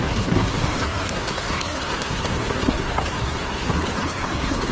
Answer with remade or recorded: remade